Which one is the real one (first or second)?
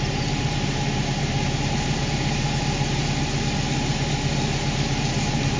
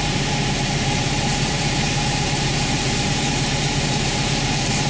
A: first